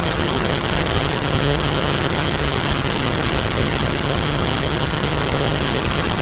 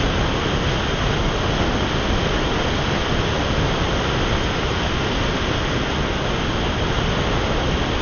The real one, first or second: second